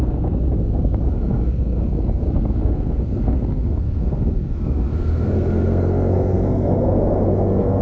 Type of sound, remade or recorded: remade